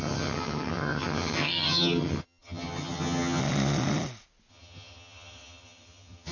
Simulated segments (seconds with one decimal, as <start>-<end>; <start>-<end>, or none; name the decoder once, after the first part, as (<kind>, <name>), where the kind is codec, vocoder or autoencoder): 0.0-3.4 (vocoder, HiFi-GAN); 4.5-6.3